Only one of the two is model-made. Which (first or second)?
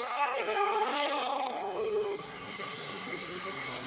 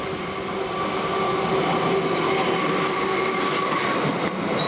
first